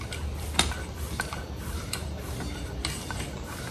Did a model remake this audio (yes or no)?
no